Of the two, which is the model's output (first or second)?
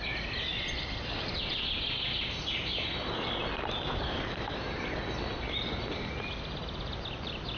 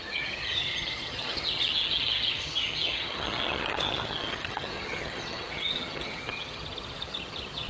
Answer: second